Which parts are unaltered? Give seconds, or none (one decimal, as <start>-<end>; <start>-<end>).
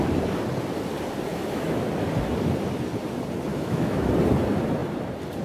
0.0-1.3; 1.9-3.5; 4.1-5.4